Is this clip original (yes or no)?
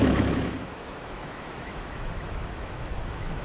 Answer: no